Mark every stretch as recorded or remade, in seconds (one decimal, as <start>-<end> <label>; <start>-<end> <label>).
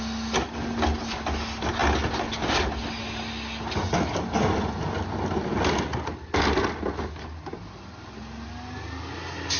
0.0-9.6 recorded